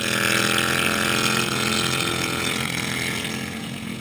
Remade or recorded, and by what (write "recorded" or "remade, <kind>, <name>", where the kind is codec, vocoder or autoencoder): remade, vocoder, Vocos